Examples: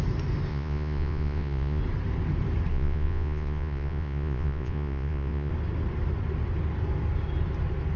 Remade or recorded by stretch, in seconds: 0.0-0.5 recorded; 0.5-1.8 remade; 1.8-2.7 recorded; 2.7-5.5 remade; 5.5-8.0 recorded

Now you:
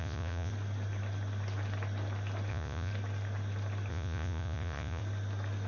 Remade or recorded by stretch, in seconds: 0.0-0.5 remade; 0.5-2.5 recorded; 2.5-2.9 remade; 2.9-3.9 recorded; 3.9-5.0 remade; 5.0-5.7 recorded